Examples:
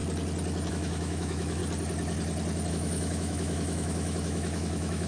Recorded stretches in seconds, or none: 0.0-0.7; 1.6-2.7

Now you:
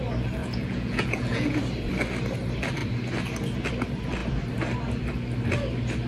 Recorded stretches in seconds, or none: 0.0-0.4; 1.6-6.1

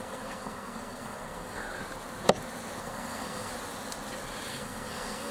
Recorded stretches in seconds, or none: 1.8-2.8; 3.5-4.5

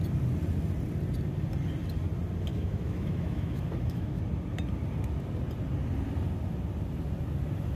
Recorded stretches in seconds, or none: 0.0-2.5; 4.2-7.7

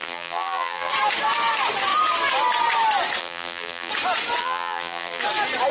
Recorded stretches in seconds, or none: 0.9-3.2; 3.9-4.4; 5.2-5.7

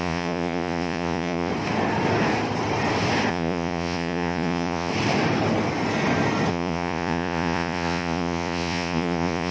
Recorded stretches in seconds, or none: 1.5-3.3; 4.9-6.5